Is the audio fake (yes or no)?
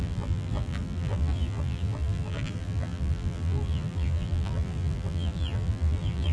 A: yes